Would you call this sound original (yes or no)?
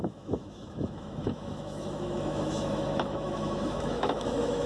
no